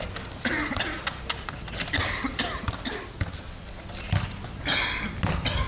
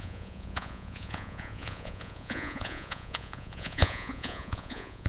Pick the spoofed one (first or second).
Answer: second